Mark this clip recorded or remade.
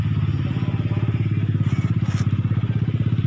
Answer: recorded